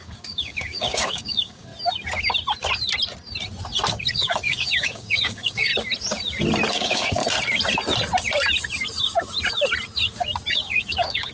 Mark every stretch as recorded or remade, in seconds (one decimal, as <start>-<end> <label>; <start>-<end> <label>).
0.0-1.7 remade; 1.7-4.1 recorded; 4.1-5.7 remade; 5.7-6.7 recorded; 6.7-7.2 remade; 7.2-10.5 recorded; 10.5-11.3 remade